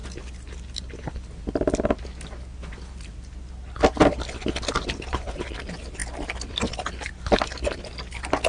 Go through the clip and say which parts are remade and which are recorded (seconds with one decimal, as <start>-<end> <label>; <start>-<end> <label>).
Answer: 0.0-8.5 recorded